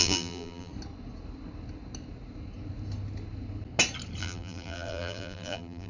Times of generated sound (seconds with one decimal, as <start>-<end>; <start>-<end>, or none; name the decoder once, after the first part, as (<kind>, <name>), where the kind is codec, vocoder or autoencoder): 0.0-0.7 (vocoder, BigVGAN v2); 4.2-5.9